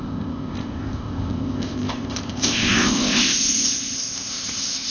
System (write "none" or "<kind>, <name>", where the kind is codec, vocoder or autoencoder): codec, ZipCodec